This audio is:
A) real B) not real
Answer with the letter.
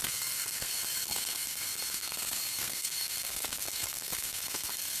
B